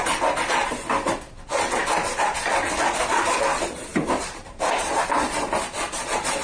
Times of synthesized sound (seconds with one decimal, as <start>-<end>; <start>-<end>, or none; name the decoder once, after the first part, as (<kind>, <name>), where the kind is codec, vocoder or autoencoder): 3.9-5.3 (vocoder, BigVGAN v2)